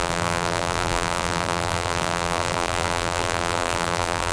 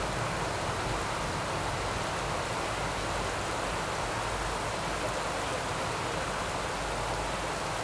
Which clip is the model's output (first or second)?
first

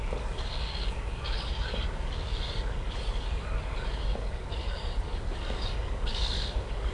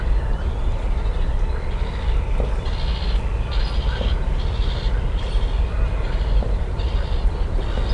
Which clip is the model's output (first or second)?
first